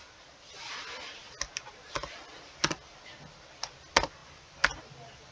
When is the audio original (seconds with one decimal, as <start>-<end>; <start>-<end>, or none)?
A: 0.0-5.3